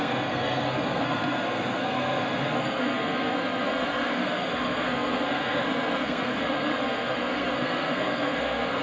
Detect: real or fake fake